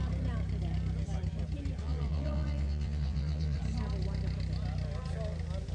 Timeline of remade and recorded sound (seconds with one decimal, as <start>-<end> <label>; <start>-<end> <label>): 0.0-1.8 recorded; 1.8-3.6 remade; 3.6-5.7 recorded